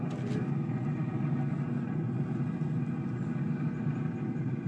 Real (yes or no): yes